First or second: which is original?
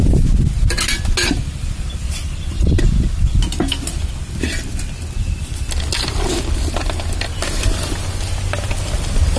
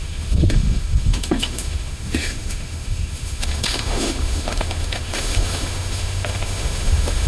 first